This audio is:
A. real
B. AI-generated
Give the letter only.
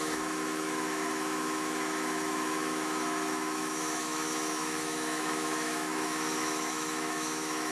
B